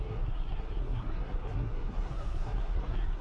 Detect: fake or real fake